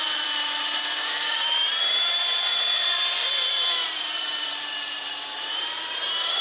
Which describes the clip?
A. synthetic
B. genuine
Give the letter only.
A